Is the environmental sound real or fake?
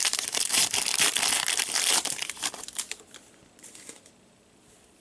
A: fake